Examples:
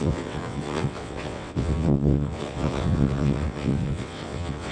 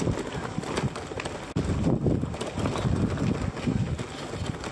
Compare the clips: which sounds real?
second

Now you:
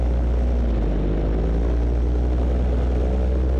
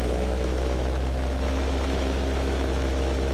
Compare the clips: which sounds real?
first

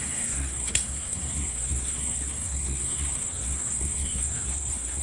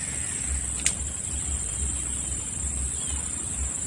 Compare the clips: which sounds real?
second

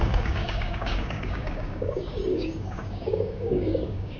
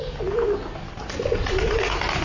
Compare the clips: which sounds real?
second